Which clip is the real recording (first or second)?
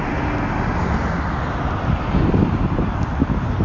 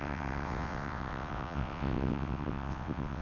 first